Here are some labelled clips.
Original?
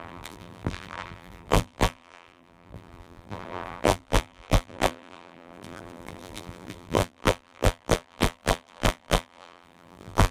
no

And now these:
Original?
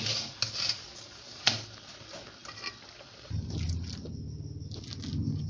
yes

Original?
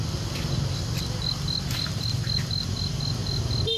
yes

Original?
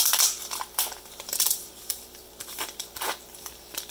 no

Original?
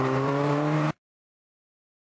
no